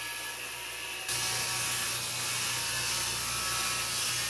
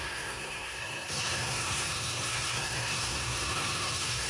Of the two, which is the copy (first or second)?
second